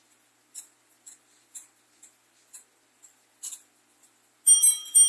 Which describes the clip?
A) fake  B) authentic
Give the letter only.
B